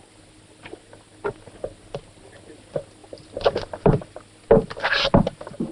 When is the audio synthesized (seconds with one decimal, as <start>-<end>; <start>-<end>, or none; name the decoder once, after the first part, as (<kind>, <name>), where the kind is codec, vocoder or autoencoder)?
none